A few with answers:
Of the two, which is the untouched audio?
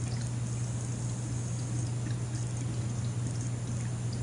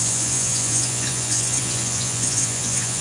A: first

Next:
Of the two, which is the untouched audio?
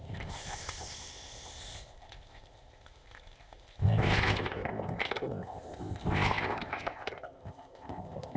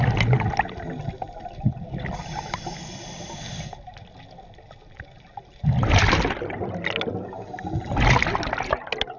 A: second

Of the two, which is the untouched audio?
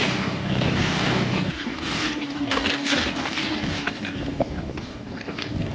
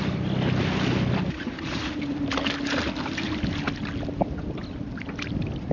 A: second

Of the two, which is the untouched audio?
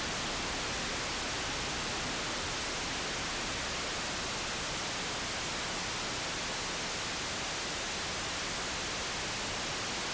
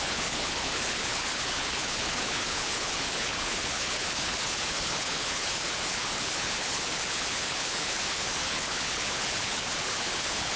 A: first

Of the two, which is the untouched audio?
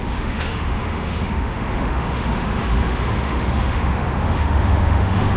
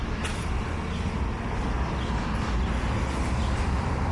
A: second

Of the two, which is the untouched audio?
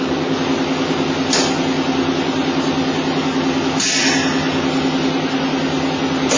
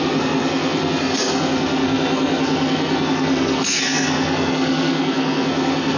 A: first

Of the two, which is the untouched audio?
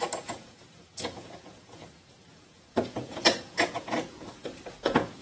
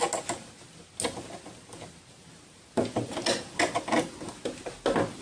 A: second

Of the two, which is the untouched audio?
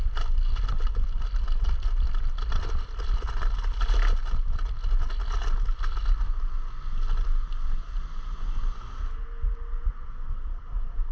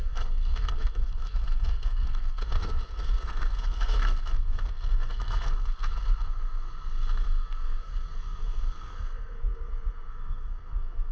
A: first